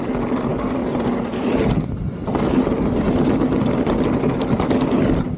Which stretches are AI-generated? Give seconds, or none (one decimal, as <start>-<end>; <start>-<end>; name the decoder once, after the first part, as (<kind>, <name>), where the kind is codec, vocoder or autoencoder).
none